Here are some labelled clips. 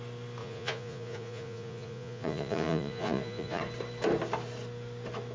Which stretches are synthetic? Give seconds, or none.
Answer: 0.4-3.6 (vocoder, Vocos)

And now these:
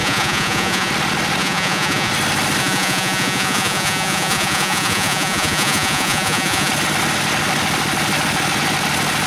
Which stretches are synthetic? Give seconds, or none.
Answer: 0.0-0.9 (vocoder, Vocos); 1.4-2.1; 2.6-6.7

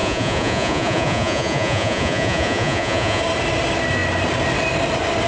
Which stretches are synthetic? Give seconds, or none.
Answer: 0.0-3.2 (vocoder, Vocos)

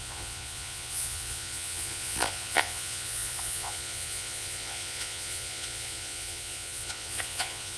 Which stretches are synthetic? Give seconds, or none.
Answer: 0.0-7.8 (vocoder, Vocos)

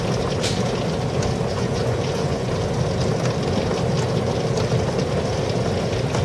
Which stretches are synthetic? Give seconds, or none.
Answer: 1.5-2.5 (vocoder, Vocos)

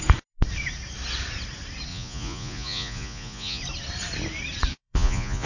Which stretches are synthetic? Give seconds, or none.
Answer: 1.9-3.6 (vocoder, Vocos); 4.7-5.5